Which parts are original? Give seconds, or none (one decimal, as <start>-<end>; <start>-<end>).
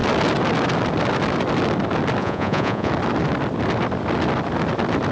0.0-2.2; 2.9-5.1